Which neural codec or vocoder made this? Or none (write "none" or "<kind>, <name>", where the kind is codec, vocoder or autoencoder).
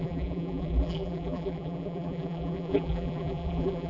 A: vocoder, BigVGAN v2